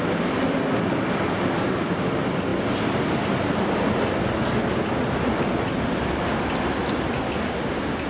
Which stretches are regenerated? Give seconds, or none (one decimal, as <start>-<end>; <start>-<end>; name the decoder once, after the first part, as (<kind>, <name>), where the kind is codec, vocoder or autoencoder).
none